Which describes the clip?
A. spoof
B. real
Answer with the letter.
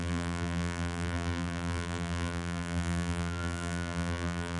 A